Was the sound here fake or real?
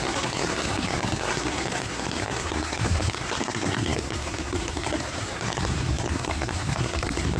fake